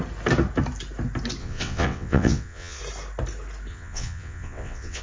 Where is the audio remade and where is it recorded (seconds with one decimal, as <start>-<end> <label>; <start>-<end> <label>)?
0.0-1.4 recorded; 1.4-2.8 remade; 2.8-3.7 recorded; 3.7-5.0 remade

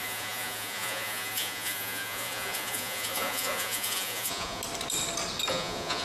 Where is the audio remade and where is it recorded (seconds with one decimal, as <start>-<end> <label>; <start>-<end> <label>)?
0.0-4.6 remade; 4.6-5.5 recorded; 5.5-6.0 remade

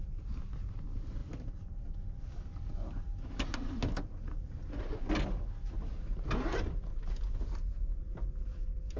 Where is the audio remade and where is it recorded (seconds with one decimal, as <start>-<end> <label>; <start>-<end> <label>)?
0.0-9.0 recorded

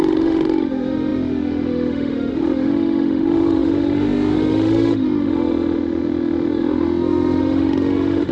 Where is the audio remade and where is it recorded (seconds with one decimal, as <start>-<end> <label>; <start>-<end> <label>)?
0.0-8.3 remade

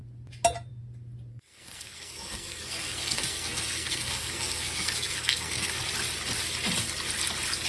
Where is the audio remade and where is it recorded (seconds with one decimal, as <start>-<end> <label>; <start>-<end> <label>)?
0.0-1.3 recorded; 1.3-5.8 remade; 5.8-7.7 recorded

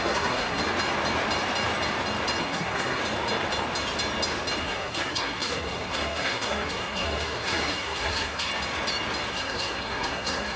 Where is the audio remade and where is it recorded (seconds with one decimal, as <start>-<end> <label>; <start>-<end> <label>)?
0.0-0.6 remade; 0.6-2.4 recorded; 2.4-3.0 remade; 3.0-4.6 recorded; 4.6-8.5 remade; 8.5-9.3 recorded; 9.3-10.6 remade